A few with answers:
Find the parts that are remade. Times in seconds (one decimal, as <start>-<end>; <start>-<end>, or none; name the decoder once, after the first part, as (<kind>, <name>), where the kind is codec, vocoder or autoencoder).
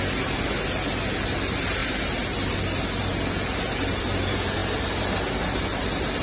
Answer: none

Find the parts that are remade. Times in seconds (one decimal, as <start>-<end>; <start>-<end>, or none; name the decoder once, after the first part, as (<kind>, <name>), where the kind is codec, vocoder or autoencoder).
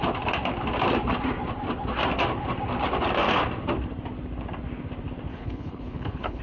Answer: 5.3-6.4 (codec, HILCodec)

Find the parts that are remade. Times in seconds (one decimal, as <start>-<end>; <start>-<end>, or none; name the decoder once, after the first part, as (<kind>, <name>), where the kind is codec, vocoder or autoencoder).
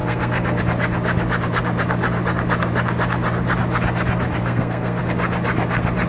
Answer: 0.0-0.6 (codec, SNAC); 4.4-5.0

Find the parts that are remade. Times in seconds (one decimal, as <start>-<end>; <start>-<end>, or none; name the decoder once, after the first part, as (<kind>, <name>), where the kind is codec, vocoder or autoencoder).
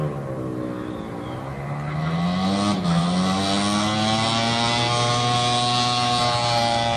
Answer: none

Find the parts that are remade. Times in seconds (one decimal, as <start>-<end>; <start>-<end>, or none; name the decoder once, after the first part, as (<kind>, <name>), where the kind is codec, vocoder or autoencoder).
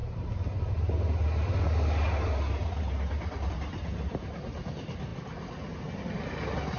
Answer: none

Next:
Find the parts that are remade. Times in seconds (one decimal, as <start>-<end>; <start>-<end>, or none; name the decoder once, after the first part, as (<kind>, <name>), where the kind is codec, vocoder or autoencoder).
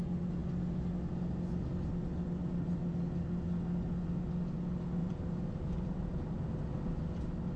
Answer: 5.0-6.5 (vocoder, BigVGAN v2)